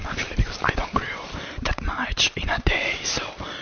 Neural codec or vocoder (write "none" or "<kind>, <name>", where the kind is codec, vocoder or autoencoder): vocoder, BigVGAN v2